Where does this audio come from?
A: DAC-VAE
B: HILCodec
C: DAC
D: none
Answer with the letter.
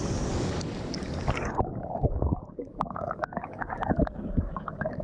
C